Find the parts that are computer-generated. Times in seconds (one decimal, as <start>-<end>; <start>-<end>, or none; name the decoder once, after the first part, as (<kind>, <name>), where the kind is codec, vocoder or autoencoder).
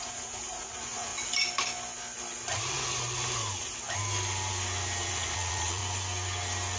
0.0-1.1 (vocoder, Vocos); 5.1-5.8